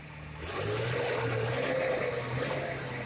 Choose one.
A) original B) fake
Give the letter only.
A